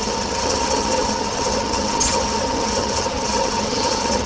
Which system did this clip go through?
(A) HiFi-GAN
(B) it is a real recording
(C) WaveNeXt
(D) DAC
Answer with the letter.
A